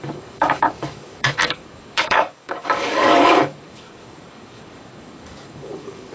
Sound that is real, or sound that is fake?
fake